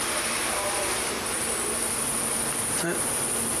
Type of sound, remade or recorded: recorded